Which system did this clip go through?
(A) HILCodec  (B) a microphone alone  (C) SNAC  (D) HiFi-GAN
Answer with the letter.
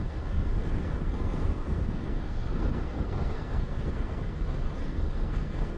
C